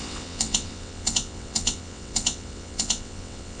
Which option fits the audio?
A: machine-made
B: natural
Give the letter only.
A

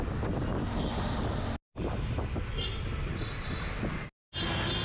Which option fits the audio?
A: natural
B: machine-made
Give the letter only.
A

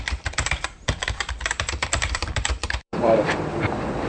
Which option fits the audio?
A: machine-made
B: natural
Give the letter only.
A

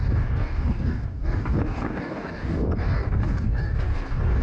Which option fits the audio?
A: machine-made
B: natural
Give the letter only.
A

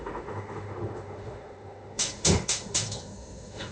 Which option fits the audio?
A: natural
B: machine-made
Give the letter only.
B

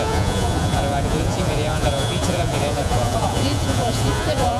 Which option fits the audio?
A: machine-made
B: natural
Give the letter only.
A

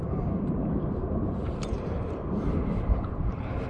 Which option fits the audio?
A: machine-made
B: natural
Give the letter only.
A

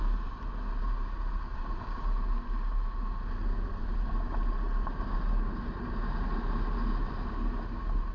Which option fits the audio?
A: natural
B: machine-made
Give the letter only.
A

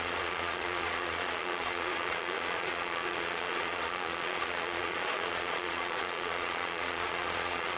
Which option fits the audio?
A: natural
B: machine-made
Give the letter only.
B